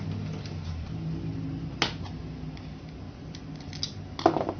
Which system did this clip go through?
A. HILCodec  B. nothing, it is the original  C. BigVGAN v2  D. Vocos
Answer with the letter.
B